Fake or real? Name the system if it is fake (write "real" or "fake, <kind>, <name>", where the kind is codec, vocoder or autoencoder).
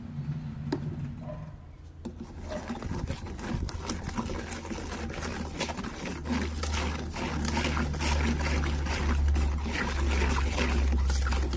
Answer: real